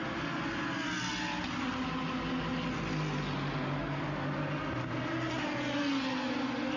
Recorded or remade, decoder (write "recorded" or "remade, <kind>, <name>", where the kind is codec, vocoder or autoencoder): recorded